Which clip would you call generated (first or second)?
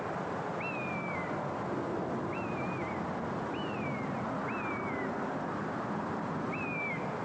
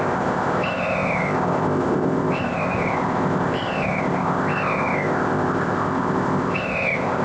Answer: second